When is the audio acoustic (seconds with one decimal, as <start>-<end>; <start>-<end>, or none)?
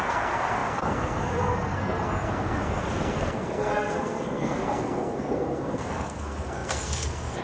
none